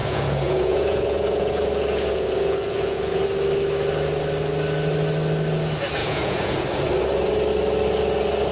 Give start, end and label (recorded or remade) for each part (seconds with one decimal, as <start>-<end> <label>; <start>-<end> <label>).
0.0-3.2 remade; 3.2-6.0 recorded; 6.0-6.9 remade; 6.9-8.5 recorded